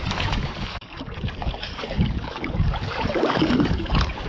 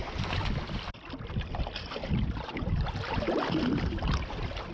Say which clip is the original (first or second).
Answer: second